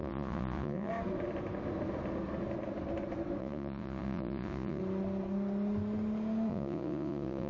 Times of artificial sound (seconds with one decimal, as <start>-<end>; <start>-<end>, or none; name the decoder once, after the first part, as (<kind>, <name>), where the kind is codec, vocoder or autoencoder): 0.0-0.9 (vocoder, Vocos); 3.4-4.8; 6.5-7.5